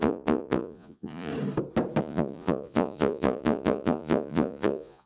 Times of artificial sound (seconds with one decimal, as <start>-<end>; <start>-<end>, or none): 0.0-1.3; 2.0-5.1